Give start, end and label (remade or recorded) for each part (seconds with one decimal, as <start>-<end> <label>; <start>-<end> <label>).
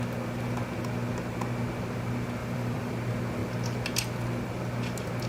0.0-2.4 recorded; 2.4-2.9 remade; 2.9-5.3 recorded